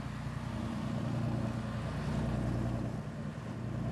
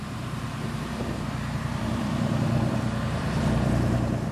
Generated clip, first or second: second